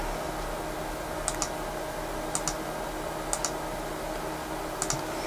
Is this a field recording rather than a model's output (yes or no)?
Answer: yes